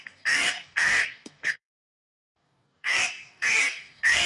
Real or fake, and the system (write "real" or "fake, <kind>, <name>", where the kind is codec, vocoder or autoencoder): fake, codec, DAC